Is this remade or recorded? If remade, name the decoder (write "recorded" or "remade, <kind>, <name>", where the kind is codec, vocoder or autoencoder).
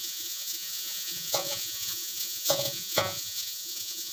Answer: remade, vocoder, Vocos